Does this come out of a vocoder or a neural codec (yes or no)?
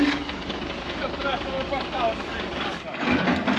yes